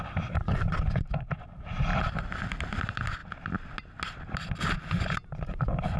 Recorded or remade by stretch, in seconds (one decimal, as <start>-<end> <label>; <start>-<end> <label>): 0.0-6.0 recorded